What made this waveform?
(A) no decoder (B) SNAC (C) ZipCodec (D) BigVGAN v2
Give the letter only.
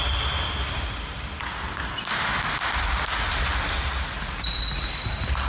A